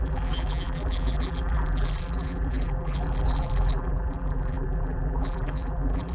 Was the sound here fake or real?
fake